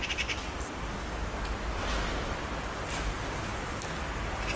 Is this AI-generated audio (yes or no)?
no